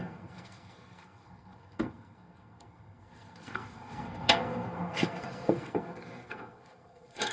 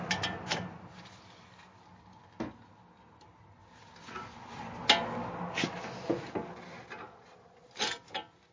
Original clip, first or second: second